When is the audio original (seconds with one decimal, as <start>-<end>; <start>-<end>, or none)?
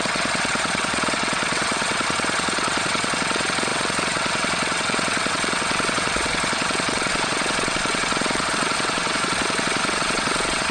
none